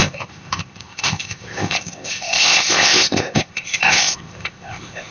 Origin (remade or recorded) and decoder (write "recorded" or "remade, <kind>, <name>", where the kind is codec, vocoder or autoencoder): remade, codec, ZipCodec